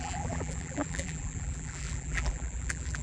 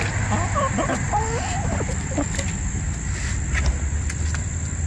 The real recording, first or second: second